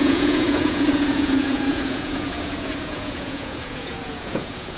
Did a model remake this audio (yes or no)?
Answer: yes